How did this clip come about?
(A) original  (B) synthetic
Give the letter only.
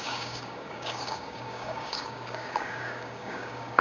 B